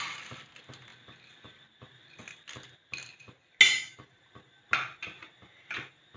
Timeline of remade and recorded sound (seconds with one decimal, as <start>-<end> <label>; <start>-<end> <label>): 0.0-6.2 recorded